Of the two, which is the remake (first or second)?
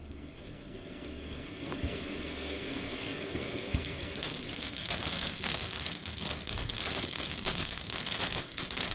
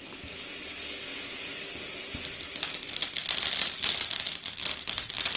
first